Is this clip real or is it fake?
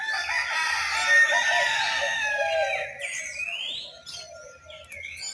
real